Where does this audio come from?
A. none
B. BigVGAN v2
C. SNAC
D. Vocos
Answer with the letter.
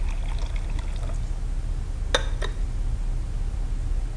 A